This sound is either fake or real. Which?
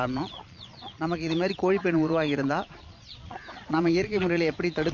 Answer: fake